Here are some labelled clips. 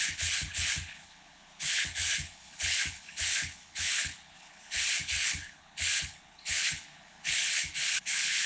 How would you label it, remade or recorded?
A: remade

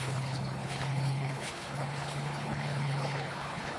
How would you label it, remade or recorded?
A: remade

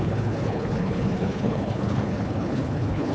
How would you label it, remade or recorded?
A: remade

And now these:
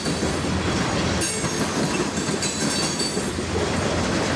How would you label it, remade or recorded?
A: recorded